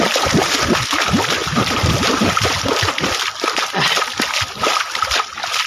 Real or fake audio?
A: real